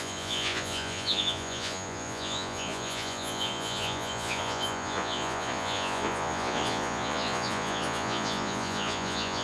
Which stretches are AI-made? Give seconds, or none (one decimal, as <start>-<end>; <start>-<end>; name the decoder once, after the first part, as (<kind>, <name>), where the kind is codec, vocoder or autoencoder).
0.0-9.4 (vocoder, Vocos)